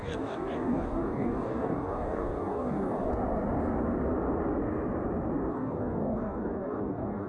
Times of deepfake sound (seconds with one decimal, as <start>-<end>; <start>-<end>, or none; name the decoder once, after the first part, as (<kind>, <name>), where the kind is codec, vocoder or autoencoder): 0.0-3.1 (codec, DAC); 5.5-7.3